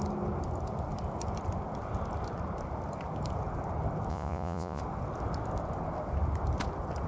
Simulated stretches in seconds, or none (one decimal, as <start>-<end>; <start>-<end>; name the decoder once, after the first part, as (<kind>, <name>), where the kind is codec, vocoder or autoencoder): 4.1-4.8 (vocoder, Vocos)